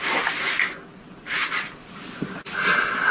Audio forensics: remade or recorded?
recorded